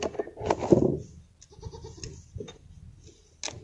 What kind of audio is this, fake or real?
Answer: real